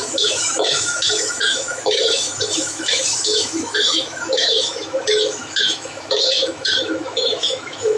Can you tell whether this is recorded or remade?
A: remade